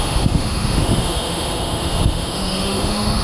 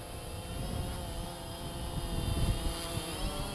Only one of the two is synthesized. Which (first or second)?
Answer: first